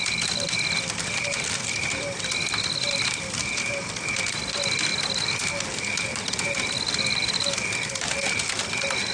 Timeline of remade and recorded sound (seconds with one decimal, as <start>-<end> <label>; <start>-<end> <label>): 0.0-9.1 recorded